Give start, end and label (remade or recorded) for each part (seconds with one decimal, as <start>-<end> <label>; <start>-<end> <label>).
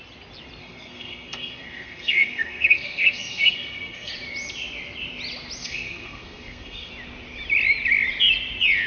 0.0-0.6 recorded; 0.6-4.1 remade; 4.1-5.6 recorded; 5.6-6.9 remade; 6.9-8.9 recorded